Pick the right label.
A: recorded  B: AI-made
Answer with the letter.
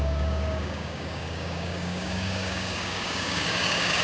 B